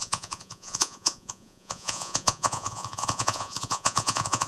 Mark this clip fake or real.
fake